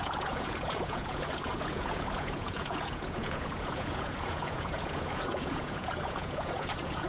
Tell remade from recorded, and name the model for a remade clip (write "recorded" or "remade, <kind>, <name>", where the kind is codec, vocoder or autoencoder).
remade, vocoder, Vocos